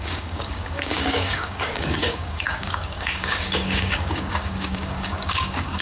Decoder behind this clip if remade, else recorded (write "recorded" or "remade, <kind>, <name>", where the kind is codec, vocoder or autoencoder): remade, codec, DAC